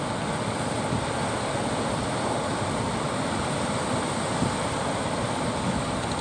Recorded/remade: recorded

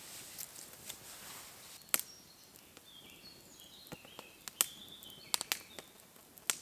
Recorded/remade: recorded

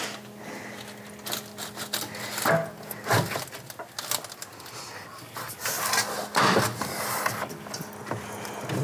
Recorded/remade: recorded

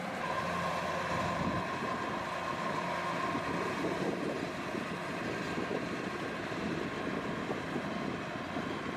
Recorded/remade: recorded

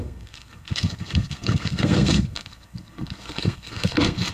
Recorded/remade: remade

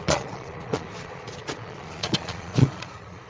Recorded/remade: remade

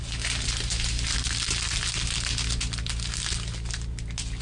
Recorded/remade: recorded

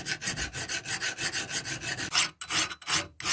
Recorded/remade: recorded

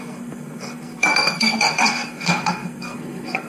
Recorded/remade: remade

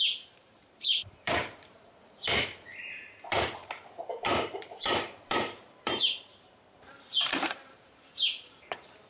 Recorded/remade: remade